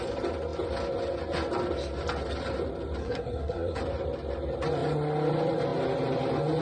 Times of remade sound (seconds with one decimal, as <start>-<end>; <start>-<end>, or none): 3.0-3.8